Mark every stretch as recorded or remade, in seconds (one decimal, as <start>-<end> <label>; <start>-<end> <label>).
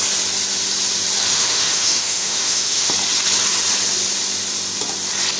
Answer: 0.0-1.3 recorded; 1.3-2.9 remade; 2.9-5.4 recorded